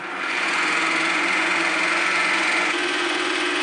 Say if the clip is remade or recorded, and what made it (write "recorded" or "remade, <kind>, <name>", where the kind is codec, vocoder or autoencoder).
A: remade, vocoder, Vocos